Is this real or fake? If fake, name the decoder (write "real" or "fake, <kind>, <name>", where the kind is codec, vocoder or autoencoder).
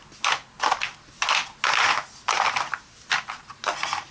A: real